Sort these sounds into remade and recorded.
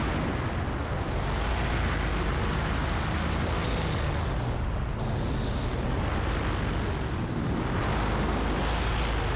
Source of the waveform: recorded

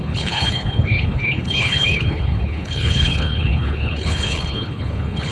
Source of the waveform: remade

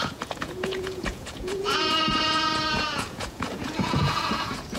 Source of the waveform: remade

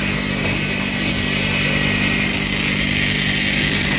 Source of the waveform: recorded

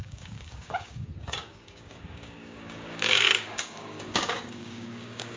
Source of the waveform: remade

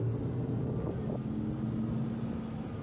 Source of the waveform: recorded